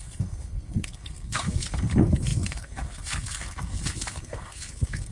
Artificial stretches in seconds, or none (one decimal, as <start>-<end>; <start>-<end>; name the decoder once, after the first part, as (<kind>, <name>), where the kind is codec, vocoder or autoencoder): 0.0-5.1 (codec, SNAC)